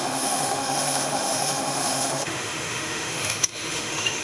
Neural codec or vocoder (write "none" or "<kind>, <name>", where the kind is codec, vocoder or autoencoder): autoencoder, DAC-VAE